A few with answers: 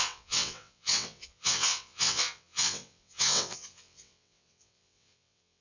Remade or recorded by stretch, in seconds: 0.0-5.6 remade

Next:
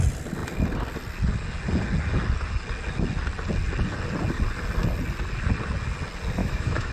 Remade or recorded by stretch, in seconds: 0.0-6.4 recorded; 6.4-6.9 remade

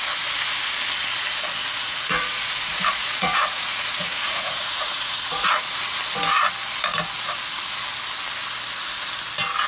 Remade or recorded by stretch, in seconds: 0.0-1.6 recorded; 1.6-6.0 remade; 6.0-9.7 recorded

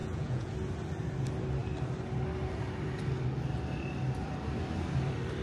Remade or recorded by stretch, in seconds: 0.0-0.5 remade; 0.5-5.4 recorded